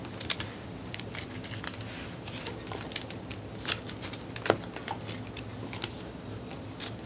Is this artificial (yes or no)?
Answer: no